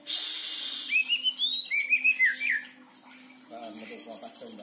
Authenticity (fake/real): real